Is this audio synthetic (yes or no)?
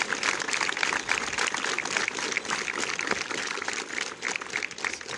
no